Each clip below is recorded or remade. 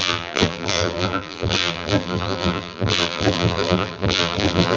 remade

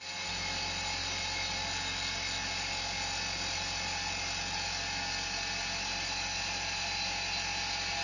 recorded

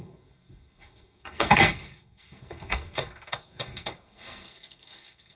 remade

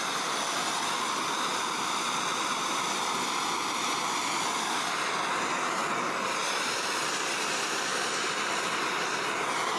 remade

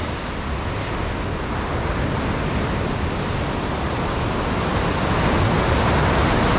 recorded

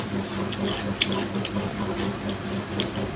recorded